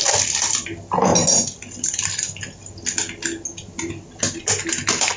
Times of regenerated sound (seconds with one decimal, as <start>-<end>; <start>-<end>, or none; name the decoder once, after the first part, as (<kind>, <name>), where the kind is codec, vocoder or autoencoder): none